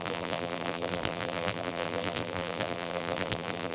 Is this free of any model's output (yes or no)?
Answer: no